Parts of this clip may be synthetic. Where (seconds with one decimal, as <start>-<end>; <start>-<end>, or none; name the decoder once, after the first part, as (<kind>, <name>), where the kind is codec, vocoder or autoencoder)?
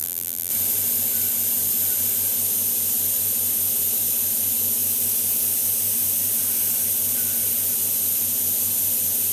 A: 0.0-0.5 (vocoder, BigVGAN v2)